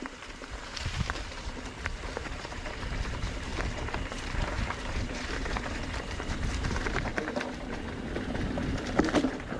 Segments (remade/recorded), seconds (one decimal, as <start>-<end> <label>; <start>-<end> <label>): 0.0-9.6 remade

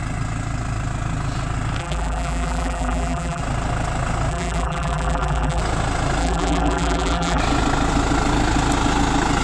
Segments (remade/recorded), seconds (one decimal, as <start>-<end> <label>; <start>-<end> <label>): 0.0-1.8 recorded; 1.8-3.4 remade; 3.4-4.3 recorded; 4.3-5.6 remade; 5.6-6.2 recorded; 6.2-7.4 remade; 7.4-9.4 recorded